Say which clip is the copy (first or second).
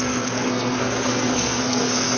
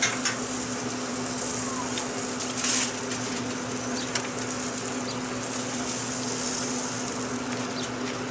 first